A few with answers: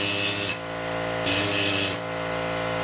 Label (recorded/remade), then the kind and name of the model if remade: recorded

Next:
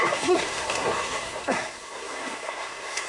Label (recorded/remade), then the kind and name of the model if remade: remade, codec, SNAC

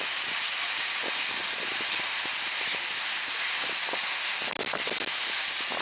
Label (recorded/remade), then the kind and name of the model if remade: recorded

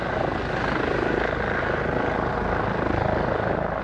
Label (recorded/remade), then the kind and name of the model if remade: recorded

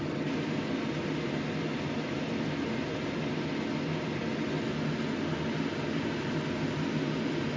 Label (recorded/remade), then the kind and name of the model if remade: recorded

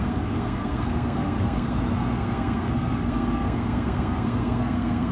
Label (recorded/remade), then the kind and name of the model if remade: remade, codec, SNAC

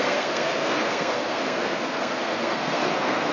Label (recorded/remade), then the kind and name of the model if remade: remade, codec, SNAC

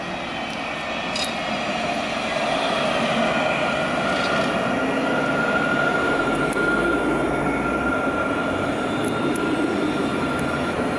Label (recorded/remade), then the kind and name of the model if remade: recorded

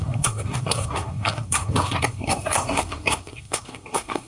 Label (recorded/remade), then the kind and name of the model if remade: remade, codec, SNAC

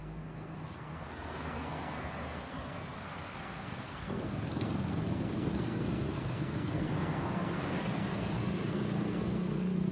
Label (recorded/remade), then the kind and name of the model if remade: remade, codec, SNAC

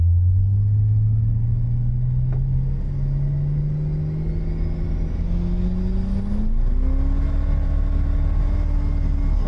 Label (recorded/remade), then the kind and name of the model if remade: recorded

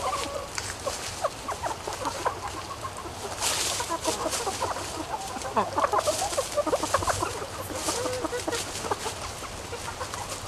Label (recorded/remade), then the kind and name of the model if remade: recorded